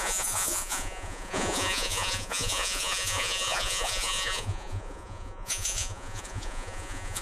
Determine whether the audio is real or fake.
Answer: fake